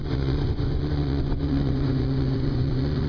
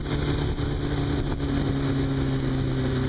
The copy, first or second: first